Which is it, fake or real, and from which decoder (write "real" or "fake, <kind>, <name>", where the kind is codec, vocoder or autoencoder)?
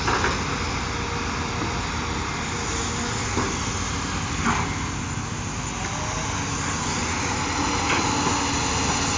real